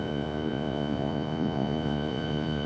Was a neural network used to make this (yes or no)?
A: yes